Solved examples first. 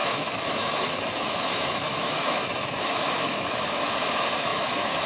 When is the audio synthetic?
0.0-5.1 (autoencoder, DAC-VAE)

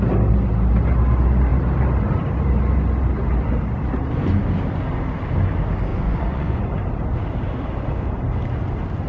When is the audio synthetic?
5.9-6.6 (vocoder, Vocos)

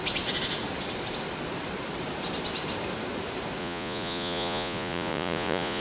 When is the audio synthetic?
3.6-5.8 (vocoder, Vocos)

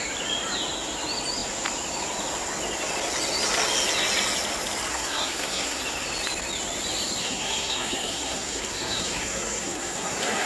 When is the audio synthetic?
4.9-5.8 (codec, SNAC); 7.2-10.5

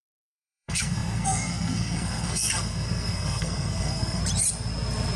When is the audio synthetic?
0.0-4.2 (codec, SNAC)

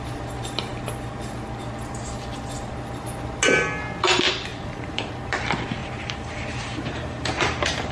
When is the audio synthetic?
4.5-5.1 (vocoder, BigVGAN v2); 5.8-7.9

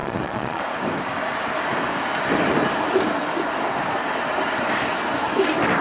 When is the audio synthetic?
0.0-0.6 (vocoder, Vocos)

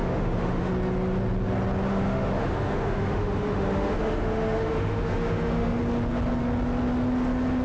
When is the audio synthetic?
0.0-0.7 (autoencoder, DAC-VAE); 1.9-5.8